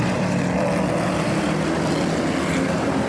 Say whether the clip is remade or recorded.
recorded